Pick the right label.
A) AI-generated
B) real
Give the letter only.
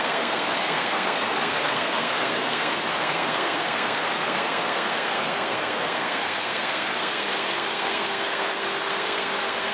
A